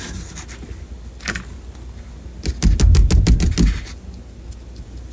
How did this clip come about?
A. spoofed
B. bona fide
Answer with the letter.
B